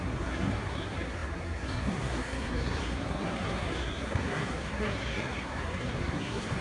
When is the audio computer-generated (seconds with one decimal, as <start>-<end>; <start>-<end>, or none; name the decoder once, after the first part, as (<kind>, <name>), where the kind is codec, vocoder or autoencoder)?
0.0-6.6 (codec, SNAC)